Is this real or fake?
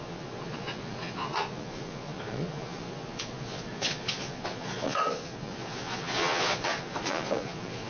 fake